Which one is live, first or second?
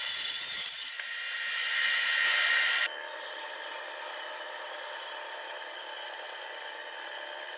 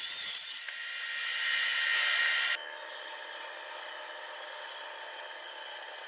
second